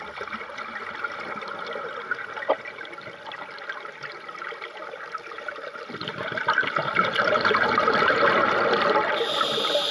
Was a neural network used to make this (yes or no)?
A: no